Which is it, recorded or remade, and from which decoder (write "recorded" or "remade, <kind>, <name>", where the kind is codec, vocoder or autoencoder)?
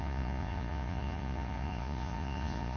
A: remade, vocoder, Vocos